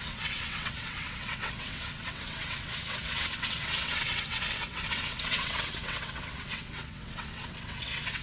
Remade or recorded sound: remade